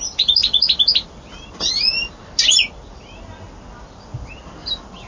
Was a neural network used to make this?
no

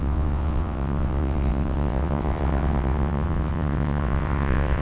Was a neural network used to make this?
yes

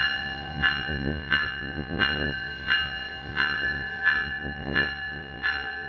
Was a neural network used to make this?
yes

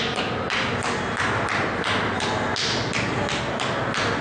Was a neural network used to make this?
no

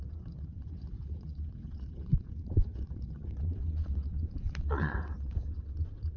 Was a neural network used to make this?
yes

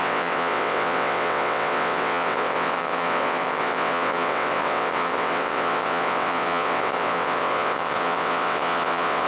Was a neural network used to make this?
yes